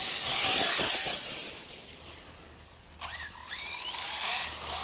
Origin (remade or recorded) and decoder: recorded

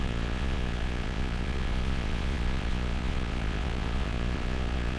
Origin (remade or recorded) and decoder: remade, vocoder, Vocos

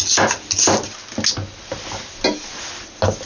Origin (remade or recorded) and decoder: recorded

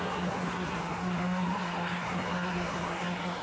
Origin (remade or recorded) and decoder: remade, codec, SNAC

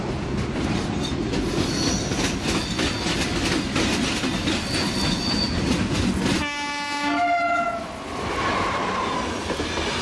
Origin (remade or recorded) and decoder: recorded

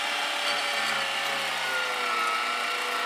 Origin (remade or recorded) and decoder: recorded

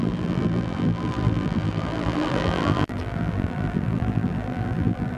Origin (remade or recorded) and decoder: remade, vocoder, BigVGAN v2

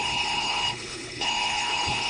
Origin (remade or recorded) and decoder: remade, codec, HILCodec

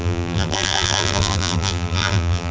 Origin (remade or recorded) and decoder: remade, vocoder, BigVGAN v2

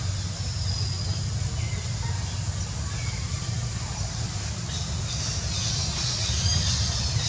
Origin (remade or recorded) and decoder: recorded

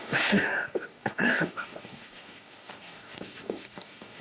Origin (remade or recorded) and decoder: remade, codec, DAC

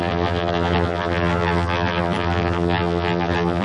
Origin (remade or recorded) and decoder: remade, vocoder, BigVGAN v2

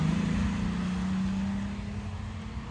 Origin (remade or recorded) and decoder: recorded